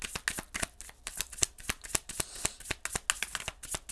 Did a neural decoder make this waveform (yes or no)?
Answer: no